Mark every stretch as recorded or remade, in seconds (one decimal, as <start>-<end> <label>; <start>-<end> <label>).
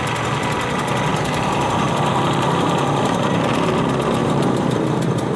0.0-1.1 recorded; 1.1-3.2 remade; 3.2-4.2 recorded; 4.2-5.4 remade